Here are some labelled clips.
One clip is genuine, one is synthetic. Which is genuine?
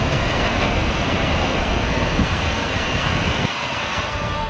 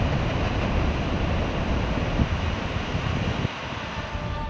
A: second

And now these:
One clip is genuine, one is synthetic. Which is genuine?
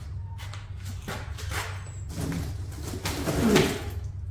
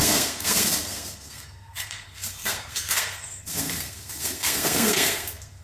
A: first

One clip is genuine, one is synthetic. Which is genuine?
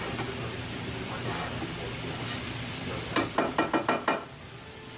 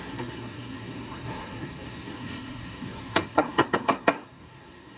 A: first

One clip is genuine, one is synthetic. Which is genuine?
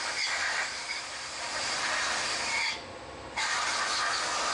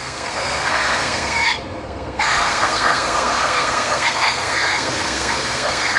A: first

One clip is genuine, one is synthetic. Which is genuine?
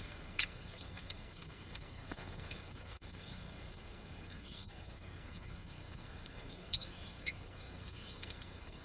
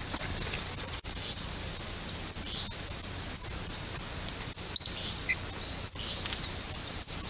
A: second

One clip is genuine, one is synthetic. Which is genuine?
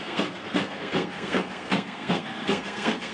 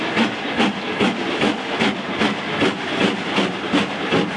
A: second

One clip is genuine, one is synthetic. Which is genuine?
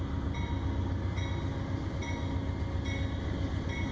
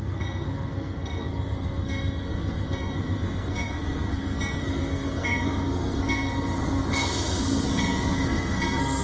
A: first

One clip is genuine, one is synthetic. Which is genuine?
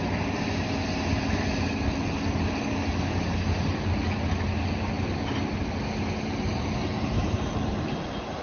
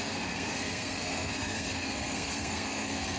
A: first